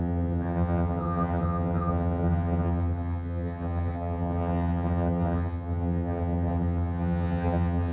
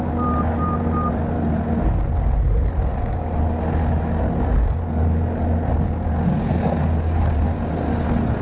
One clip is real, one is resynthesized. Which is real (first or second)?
second